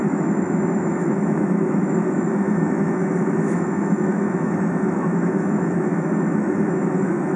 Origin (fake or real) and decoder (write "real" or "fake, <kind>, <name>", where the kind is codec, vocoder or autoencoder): fake, autoencoder, DAC-VAE